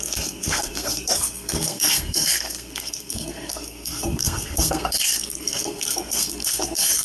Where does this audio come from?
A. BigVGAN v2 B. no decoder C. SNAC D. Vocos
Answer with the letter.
C